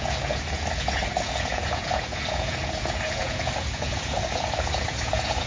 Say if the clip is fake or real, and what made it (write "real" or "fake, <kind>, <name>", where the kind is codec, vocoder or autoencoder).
fake, vocoder, Vocos